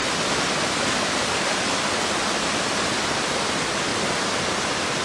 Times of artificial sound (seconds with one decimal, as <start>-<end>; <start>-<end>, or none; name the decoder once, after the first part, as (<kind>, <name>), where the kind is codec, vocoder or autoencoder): none